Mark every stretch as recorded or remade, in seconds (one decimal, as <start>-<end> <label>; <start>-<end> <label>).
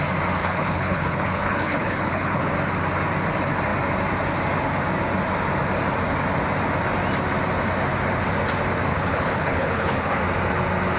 0.0-0.4 recorded; 0.4-2.5 remade; 2.5-8.9 recorded; 8.9-10.2 remade; 10.2-11.0 recorded